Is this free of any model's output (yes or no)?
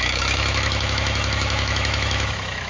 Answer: no